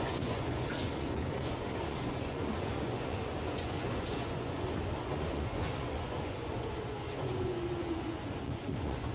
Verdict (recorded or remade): remade